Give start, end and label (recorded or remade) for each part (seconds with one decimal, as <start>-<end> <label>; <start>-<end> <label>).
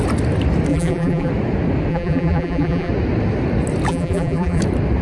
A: 0.0-0.7 recorded; 0.7-1.3 remade; 1.3-1.9 recorded; 1.9-2.9 remade; 2.9-3.9 recorded; 3.9-4.6 remade; 4.6-5.0 recorded